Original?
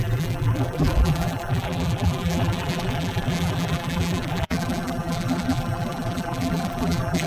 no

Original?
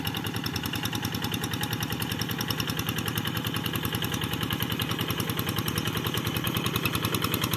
yes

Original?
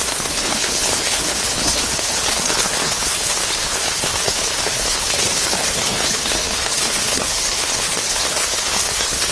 no